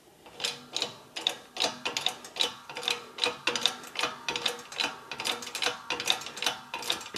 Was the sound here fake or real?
real